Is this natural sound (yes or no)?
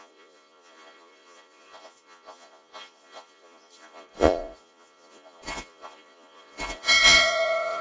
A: no